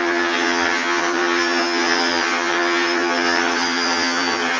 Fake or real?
fake